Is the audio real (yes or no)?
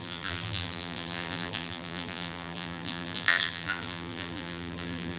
no